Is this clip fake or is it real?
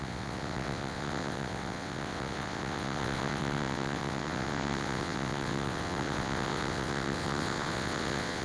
fake